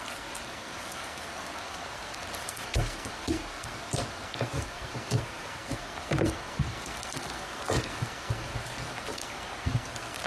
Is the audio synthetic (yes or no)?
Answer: yes